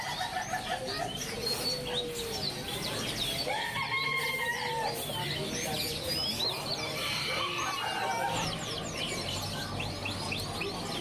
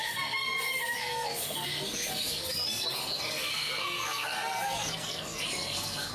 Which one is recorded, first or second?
first